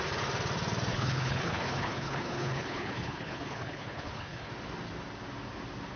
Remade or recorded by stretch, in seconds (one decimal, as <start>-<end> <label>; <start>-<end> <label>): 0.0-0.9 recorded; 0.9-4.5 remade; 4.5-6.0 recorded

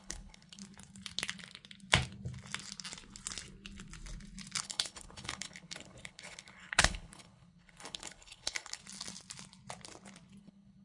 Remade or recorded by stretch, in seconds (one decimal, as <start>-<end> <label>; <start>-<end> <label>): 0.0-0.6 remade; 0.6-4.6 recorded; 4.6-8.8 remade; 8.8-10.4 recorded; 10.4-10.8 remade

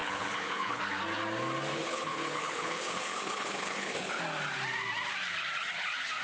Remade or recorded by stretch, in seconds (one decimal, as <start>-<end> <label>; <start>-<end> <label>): 0.0-0.8 remade; 0.8-1.7 recorded; 1.7-4.2 remade; 4.2-6.2 recorded